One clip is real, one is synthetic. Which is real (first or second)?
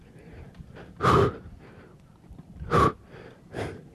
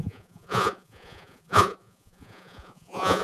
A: first